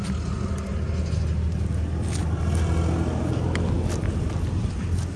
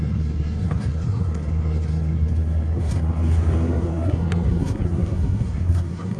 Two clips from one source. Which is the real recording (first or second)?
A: first